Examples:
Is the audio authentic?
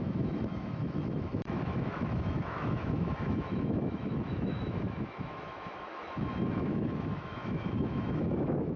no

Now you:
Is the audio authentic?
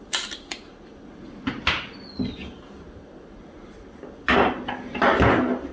yes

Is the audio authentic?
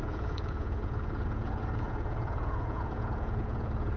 no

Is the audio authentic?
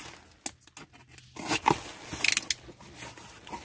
yes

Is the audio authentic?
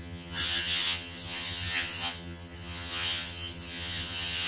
no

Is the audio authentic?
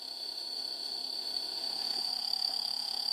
no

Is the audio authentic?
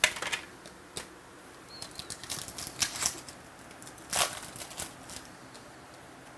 yes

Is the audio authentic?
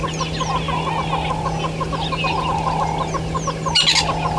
yes